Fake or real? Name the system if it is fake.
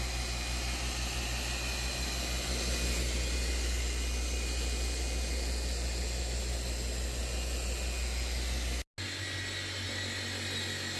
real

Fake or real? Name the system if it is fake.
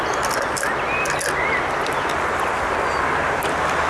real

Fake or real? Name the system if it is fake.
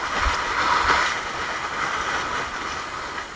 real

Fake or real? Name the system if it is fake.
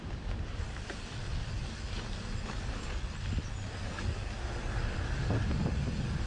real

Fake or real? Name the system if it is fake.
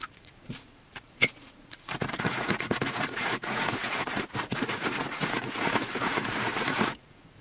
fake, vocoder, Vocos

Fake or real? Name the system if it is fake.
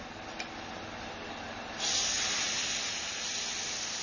real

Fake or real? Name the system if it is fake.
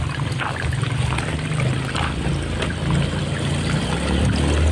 real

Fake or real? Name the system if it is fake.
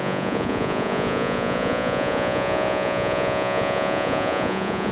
fake, vocoder, Vocos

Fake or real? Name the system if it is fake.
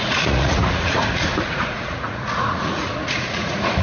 fake, vocoder, Vocos